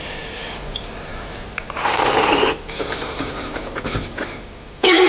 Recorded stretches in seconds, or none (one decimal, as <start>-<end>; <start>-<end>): 0.0-5.1